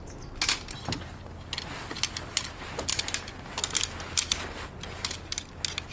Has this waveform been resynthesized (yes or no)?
no